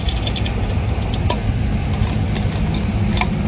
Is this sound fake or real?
real